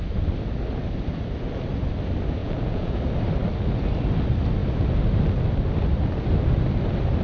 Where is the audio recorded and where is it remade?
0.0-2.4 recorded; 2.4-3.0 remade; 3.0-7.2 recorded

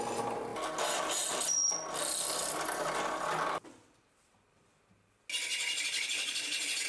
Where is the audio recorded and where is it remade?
0.0-5.5 recorded; 5.5-6.9 remade

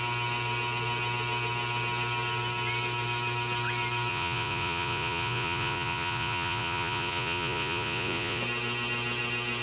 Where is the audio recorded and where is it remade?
0.0-4.1 recorded; 4.1-8.4 remade; 8.4-9.6 recorded

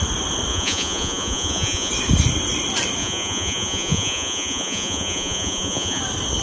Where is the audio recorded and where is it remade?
0.0-0.5 recorded; 0.5-1.9 remade; 1.9-3.0 recorded; 3.0-6.0 remade; 6.0-6.4 recorded

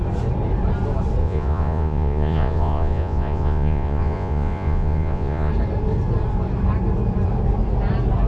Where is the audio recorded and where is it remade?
0.0-1.2 recorded; 1.2-5.5 remade; 5.5-8.3 recorded

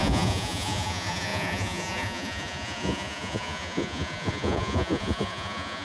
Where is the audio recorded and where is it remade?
0.0-5.8 remade

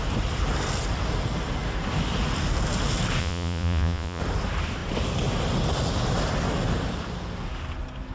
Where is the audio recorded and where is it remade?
0.0-3.2 recorded; 3.2-4.2 remade; 4.2-8.1 recorded

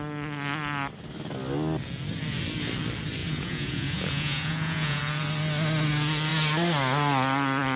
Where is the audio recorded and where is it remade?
0.0-3.2 recorded; 3.2-5.0 remade; 5.0-7.8 recorded